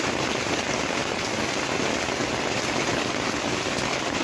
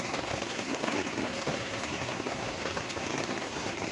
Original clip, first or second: first